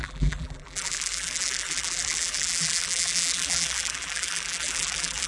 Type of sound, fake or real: fake